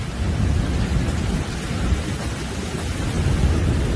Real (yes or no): yes